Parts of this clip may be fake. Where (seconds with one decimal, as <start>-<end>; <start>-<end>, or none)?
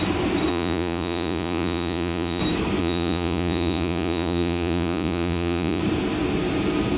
0.5-2.4; 2.8-5.8